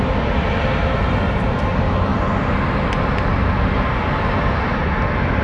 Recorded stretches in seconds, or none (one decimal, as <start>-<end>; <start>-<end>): 0.0-0.8; 1.5-5.4